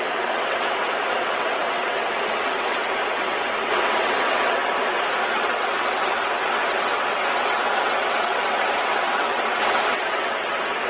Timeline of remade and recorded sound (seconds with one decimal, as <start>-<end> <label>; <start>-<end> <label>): 0.0-4.6 remade; 4.6-5.3 recorded; 5.3-10.9 remade